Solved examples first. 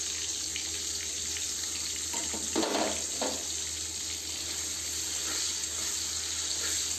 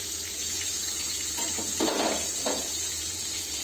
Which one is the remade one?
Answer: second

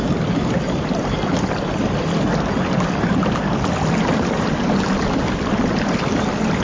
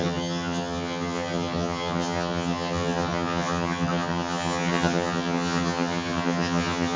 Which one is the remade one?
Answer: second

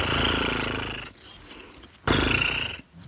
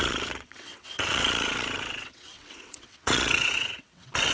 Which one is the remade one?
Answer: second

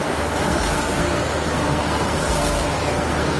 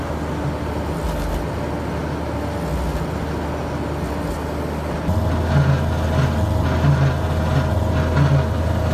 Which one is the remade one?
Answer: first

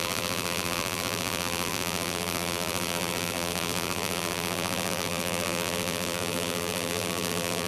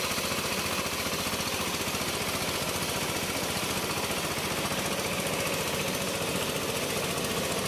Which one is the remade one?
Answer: first